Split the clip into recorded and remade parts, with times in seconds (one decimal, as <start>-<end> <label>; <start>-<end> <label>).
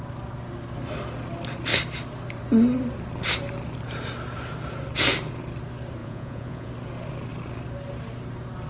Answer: 0.0-6.0 recorded; 6.0-6.7 remade; 6.7-8.7 recorded